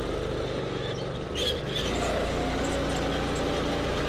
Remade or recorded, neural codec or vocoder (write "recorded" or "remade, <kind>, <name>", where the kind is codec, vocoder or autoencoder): recorded